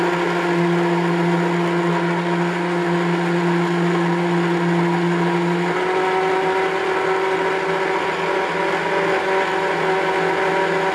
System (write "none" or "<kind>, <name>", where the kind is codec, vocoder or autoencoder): none